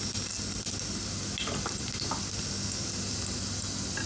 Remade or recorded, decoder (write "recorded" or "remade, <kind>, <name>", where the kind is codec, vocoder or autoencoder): recorded